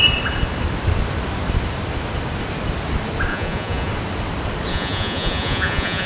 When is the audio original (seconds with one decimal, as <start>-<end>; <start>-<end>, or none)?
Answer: 0.0-3.3; 3.9-4.7

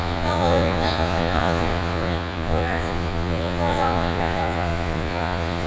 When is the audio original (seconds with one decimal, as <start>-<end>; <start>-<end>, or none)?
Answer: none

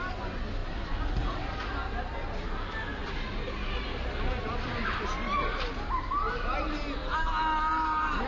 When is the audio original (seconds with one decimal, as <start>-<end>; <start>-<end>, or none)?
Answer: 0.0-8.3

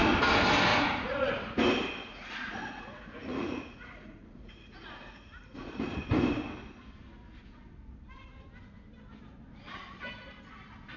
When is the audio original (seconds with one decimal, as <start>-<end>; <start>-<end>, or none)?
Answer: 0.0-0.7; 1.3-2.1; 6.0-11.0

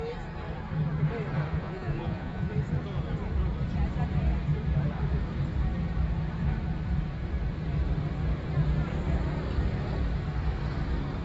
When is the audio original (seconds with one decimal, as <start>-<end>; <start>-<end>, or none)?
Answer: 0.0-1.5; 2.5-11.2

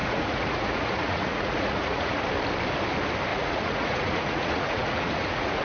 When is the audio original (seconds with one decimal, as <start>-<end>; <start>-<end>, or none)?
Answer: 2.2-3.3